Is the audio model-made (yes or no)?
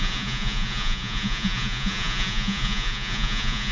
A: yes